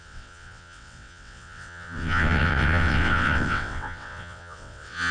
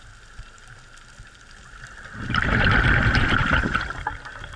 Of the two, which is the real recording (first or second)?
second